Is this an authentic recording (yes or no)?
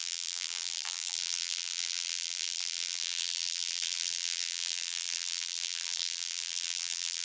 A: no